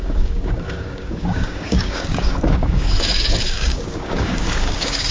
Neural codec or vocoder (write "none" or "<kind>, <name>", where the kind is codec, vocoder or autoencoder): codec, DAC